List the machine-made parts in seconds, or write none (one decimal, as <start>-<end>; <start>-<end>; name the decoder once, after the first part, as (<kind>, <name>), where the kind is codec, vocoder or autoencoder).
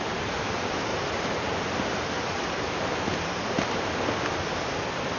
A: none